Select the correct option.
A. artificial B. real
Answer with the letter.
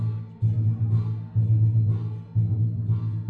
B